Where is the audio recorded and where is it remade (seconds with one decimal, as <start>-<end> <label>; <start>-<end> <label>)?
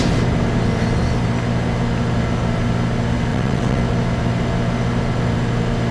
0.0-3.3 recorded; 3.3-3.8 remade; 3.8-5.9 recorded